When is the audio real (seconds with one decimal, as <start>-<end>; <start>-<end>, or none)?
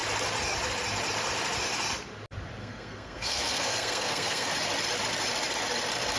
0.0-2.6; 4.5-6.2